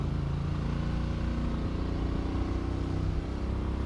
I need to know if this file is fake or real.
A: real